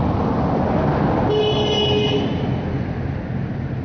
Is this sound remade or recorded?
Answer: recorded